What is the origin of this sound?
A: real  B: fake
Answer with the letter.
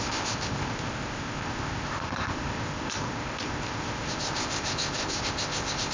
B